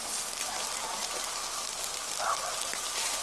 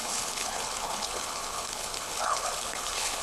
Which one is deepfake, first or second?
second